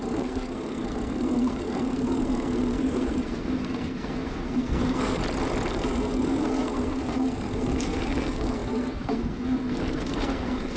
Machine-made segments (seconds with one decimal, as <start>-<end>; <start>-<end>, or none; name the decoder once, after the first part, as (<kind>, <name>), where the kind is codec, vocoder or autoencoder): 0.0-5.2 (codec, SNAC); 5.7-10.8